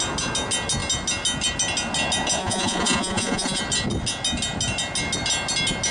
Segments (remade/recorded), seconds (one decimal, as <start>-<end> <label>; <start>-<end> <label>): 0.0-2.4 recorded; 2.4-3.6 remade; 3.6-5.9 recorded